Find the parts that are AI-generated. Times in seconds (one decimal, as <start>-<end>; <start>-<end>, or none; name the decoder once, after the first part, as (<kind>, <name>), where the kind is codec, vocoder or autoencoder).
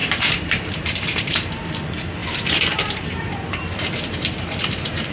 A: 0.0-1.5 (vocoder, BigVGAN v2); 2.2-5.1